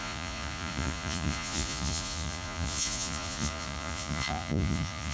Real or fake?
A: fake